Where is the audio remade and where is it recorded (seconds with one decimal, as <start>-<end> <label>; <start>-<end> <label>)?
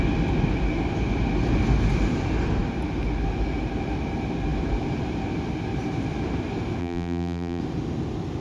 0.0-6.8 recorded; 6.8-7.6 remade; 7.6-8.4 recorded